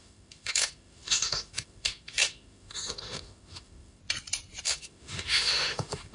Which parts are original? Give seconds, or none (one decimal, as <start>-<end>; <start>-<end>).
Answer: 4.0-4.6